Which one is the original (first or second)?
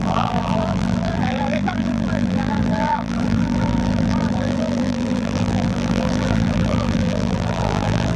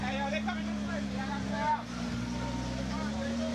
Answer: second